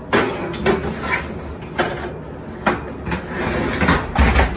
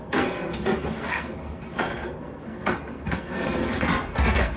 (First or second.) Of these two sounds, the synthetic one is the second